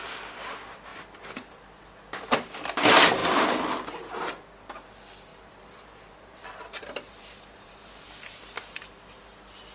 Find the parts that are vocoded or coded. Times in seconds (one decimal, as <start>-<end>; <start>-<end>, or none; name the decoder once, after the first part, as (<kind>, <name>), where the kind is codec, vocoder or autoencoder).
5.3-8.3 (vocoder, BigVGAN v2)